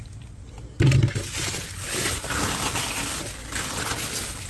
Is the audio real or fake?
real